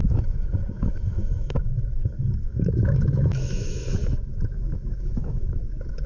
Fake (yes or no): yes